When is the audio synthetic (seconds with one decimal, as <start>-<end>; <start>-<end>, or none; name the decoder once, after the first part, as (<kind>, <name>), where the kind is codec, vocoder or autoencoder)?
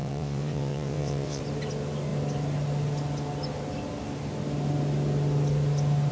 0.0-1.4 (vocoder, WaveNeXt)